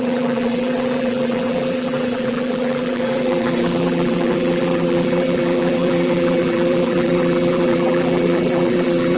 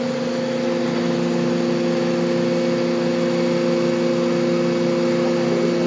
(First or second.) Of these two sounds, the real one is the second